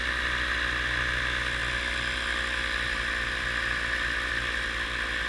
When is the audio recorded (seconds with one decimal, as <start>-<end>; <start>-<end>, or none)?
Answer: 0.0-5.3